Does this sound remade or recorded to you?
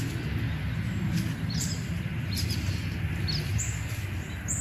recorded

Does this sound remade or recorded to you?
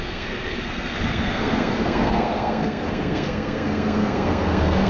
remade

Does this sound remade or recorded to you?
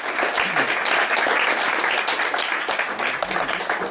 recorded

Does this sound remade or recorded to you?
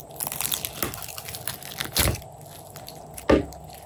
recorded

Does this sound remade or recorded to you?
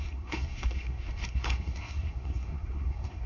remade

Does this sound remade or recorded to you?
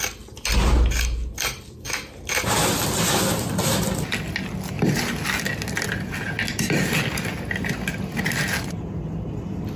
recorded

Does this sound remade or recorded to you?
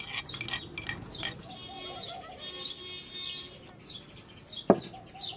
recorded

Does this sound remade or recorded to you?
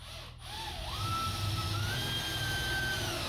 recorded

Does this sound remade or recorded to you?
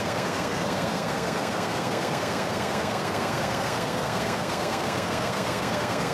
remade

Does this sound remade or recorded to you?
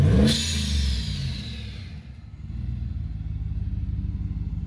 recorded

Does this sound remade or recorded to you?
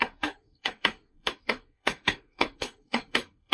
remade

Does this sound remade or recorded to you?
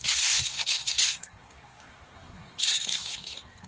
remade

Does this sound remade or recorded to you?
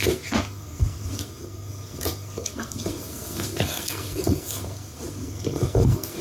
remade